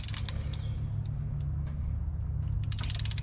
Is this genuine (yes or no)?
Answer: yes